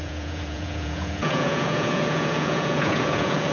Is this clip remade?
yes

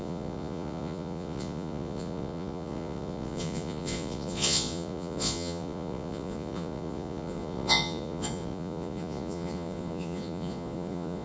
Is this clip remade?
yes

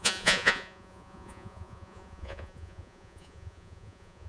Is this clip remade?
yes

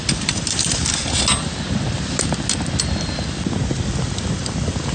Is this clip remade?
no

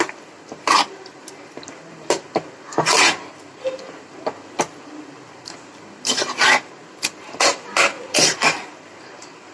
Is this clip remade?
no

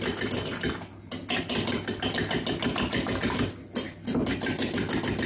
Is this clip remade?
no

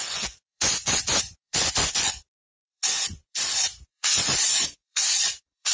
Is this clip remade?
yes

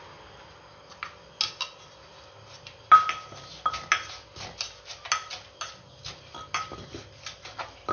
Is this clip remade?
no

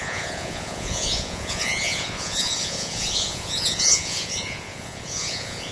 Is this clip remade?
yes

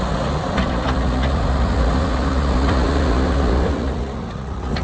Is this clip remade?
yes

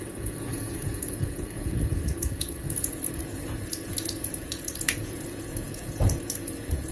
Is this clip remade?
yes